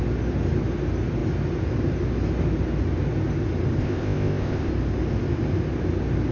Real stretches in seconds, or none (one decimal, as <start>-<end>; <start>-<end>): 0.0-3.8; 4.7-6.3